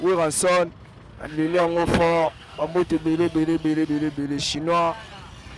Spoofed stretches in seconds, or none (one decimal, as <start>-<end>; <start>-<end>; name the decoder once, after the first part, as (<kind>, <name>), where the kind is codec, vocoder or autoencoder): 1.1-3.9 (codec, SNAC)